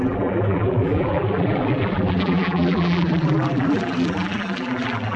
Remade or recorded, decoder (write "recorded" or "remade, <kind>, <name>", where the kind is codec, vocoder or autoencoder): remade, vocoder, BigVGAN v2